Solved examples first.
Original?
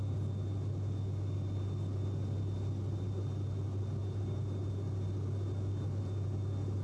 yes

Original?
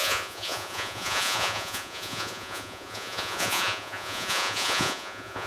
no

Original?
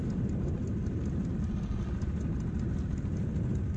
yes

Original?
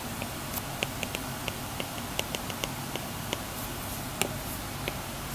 yes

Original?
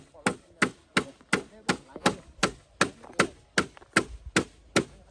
yes